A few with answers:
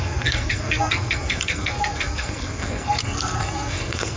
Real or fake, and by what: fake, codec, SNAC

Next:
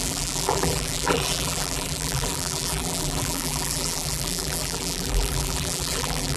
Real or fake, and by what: fake, vocoder, BigVGAN v2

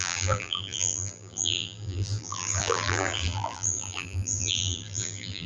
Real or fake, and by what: fake, vocoder, BigVGAN v2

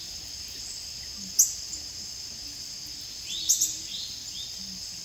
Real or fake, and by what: real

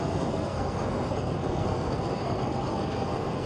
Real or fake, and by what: fake, codec, SNAC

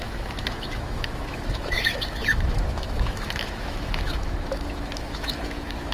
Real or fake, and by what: fake, autoencoder, DAC-VAE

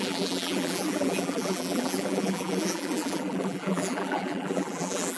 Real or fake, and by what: fake, vocoder, BigVGAN v2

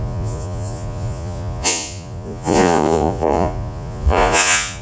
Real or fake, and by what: fake, vocoder, Vocos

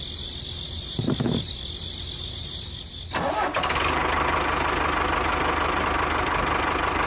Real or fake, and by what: real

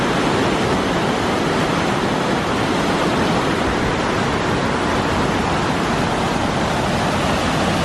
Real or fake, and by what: real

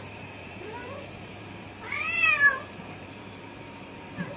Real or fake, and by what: fake, vocoder, BigVGAN v2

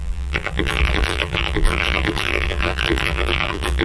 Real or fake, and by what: fake, vocoder, BigVGAN v2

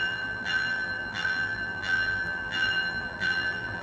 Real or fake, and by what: fake, vocoder, BigVGAN v2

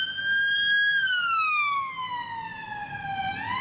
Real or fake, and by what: real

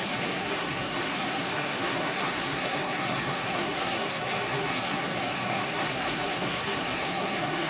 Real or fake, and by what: fake, codec, SNAC